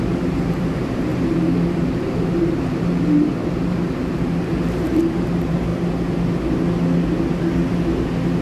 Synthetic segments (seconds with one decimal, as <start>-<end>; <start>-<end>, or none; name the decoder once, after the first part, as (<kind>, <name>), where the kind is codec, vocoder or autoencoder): 0.0-5.7 (vocoder, BigVGAN v2)